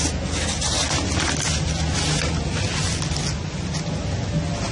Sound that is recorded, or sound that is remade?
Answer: recorded